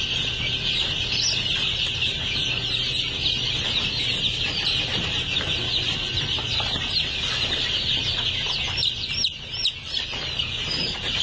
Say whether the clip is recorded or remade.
recorded